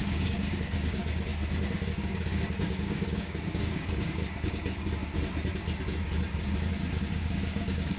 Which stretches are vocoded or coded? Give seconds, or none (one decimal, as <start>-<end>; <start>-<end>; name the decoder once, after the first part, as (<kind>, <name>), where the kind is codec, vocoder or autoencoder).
0.0-1.3 (codec, DAC); 1.9-5.0; 7.1-8.0